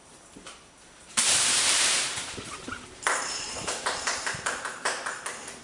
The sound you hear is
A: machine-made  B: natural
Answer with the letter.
A